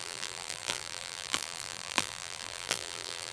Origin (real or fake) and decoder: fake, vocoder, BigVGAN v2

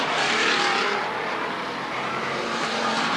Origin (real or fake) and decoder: fake, vocoder, BigVGAN v2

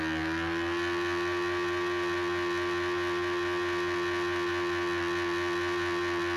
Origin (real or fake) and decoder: real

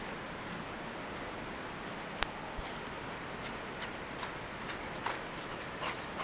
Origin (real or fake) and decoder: real